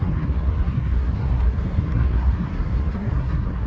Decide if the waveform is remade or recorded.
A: remade